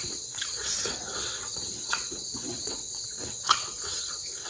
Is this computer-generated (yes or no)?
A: yes